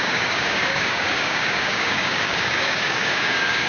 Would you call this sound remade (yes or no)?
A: yes